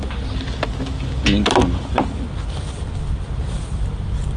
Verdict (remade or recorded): recorded